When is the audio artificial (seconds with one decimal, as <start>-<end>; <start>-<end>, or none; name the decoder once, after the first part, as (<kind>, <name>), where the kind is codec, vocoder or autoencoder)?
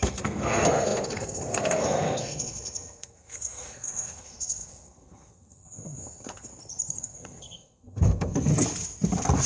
0.0-6.5 (codec, SNAC); 7.0-8.5